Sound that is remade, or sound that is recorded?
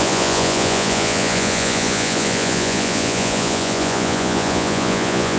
remade